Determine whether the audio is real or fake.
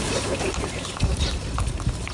real